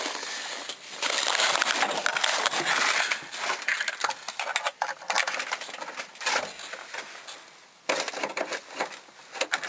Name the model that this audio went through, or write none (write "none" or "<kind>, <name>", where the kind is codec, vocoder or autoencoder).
none